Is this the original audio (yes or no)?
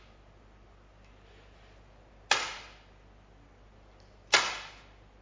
yes